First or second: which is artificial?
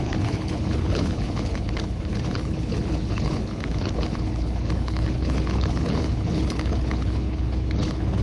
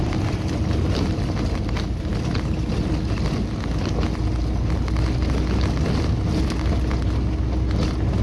first